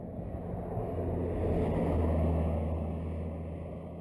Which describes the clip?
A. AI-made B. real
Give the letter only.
B